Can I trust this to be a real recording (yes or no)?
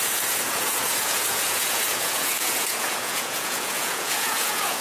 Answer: no